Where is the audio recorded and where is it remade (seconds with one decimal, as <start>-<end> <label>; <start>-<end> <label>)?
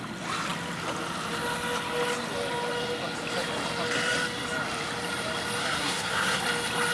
0.0-5.6 recorded; 5.6-6.4 remade; 6.4-6.9 recorded